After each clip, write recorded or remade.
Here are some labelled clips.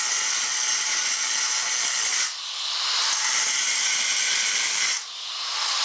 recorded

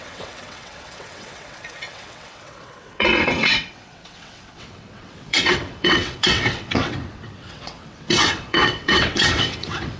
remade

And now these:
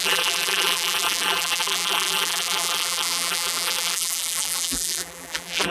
remade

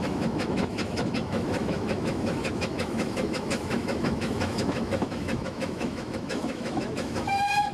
remade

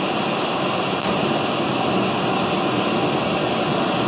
recorded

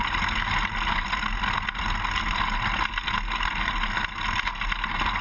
recorded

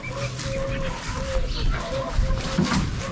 recorded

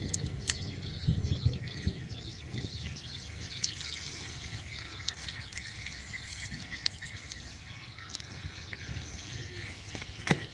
remade